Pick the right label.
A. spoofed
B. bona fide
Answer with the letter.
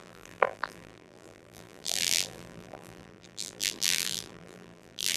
A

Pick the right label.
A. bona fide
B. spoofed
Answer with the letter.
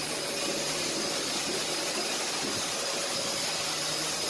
B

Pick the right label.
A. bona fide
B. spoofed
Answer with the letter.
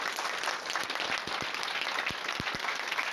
A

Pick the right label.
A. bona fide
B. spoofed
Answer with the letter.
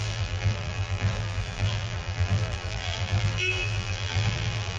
B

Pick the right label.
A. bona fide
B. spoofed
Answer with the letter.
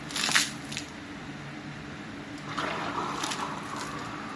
A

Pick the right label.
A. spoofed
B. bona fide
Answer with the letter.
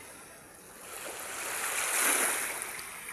B